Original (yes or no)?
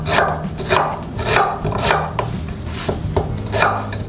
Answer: yes